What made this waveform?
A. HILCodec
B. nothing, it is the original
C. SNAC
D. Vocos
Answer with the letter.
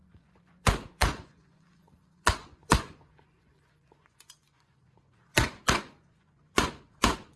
D